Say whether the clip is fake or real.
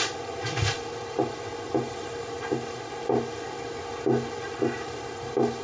real